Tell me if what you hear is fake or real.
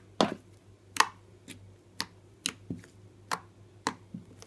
real